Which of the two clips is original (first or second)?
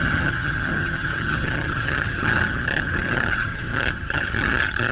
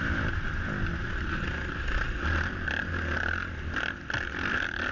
second